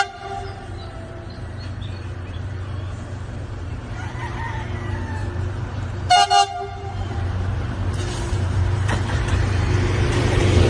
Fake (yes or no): yes